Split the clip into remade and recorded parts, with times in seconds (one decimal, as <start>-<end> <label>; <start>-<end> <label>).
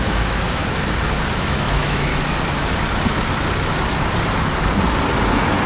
0.0-0.6 remade; 0.6-1.3 recorded; 1.3-2.1 remade; 2.1-5.7 recorded